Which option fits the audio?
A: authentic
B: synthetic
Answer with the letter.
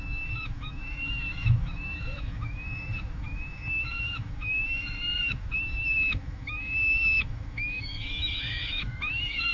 B